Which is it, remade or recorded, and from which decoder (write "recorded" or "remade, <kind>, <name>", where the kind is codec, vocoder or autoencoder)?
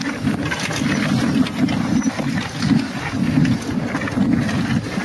recorded